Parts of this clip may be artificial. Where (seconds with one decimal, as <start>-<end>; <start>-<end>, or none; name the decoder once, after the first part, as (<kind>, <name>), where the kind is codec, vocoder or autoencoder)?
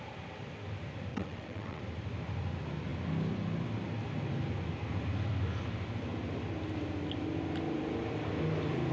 1.1-1.8 (vocoder, WaveNeXt)